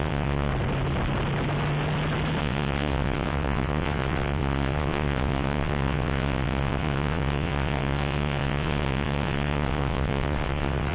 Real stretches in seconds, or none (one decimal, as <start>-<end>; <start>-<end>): 0.5-2.4